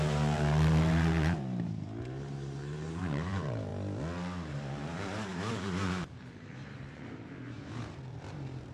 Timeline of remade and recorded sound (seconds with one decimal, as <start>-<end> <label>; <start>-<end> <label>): 0.0-3.7 remade; 3.7-4.5 recorded; 4.5-8.7 remade